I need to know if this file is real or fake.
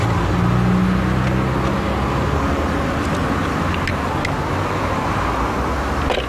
real